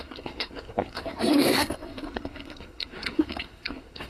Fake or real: fake